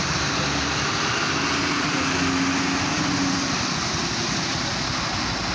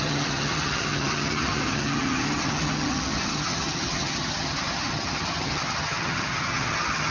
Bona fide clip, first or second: first